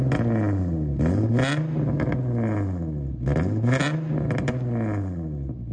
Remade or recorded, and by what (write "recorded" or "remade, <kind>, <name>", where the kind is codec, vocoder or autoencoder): recorded